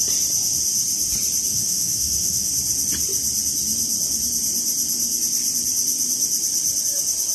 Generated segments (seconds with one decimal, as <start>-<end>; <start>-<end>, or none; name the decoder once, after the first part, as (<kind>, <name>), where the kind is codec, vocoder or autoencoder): 1.5-2.5 (autoencoder, DAC-VAE)